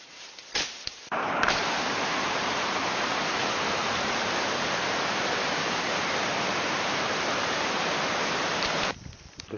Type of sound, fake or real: fake